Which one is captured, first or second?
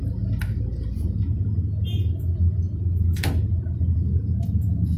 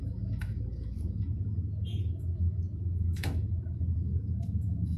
first